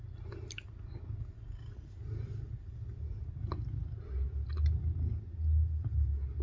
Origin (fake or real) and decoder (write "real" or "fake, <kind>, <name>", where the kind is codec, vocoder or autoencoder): real